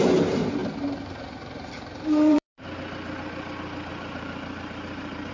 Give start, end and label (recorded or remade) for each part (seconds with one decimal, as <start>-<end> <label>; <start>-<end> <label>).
0.0-0.6 recorded; 0.6-2.6 remade; 2.6-3.9 recorded; 3.9-5.3 remade